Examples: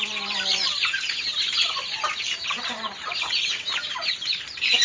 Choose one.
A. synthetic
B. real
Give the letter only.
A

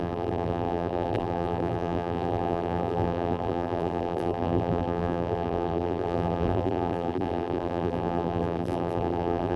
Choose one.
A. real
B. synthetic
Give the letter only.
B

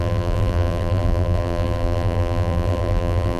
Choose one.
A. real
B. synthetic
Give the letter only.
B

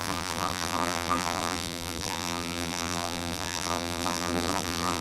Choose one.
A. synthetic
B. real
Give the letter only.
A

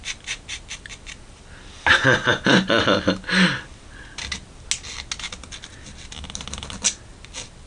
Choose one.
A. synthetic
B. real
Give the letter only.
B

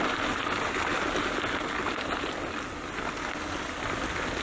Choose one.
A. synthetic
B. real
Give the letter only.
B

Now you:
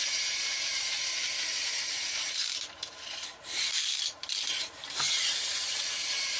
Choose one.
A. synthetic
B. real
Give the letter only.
A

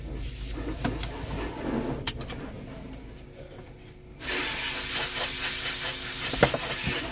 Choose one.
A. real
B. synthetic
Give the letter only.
A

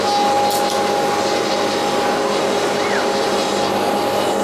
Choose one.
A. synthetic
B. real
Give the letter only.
B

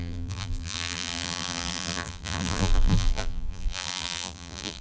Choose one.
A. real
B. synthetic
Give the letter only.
B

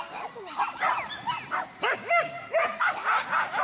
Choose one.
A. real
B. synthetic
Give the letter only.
A